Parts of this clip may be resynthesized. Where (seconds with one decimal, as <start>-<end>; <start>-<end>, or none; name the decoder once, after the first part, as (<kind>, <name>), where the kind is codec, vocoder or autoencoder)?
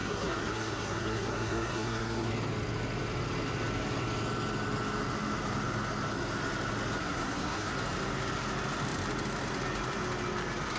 0.0-2.3 (codec, SNAC); 7.0-7.7